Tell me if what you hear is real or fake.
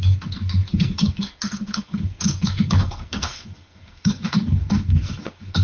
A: fake